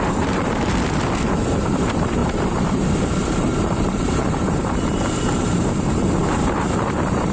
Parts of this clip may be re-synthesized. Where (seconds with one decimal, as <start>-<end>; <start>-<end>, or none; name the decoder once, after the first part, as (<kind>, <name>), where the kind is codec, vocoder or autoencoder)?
0.0-7.3 (vocoder, BigVGAN v2)